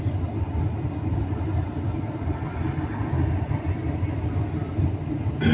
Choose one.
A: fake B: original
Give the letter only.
B